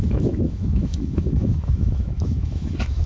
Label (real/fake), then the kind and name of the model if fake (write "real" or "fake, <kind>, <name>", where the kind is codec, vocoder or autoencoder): fake, autoencoder, DAC-VAE